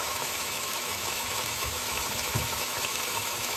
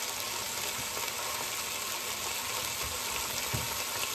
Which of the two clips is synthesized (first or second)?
first